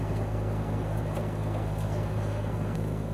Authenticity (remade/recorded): remade